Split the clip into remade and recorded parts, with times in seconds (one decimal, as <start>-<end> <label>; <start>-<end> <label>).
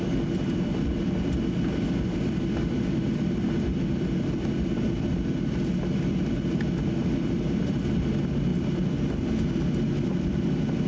0.0-10.9 recorded